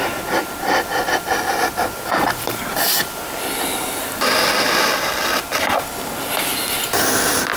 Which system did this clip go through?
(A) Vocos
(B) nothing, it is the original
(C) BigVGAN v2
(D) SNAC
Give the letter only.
B